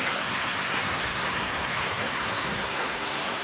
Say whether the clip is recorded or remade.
remade